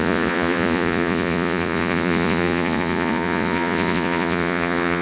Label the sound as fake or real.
fake